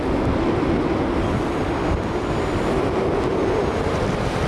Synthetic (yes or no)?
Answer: no